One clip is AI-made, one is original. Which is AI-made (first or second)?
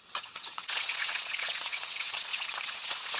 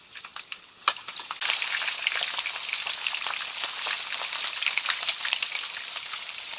first